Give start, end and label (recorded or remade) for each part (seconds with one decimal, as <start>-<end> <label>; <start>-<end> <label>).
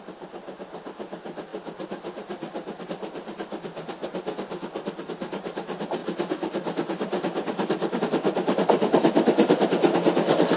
0.0-10.6 recorded